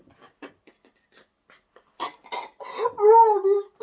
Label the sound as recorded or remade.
recorded